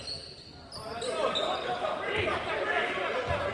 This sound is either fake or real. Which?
real